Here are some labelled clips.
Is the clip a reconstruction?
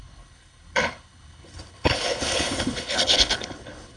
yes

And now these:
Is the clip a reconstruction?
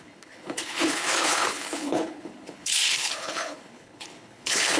yes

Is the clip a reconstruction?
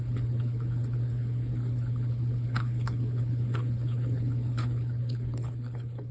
yes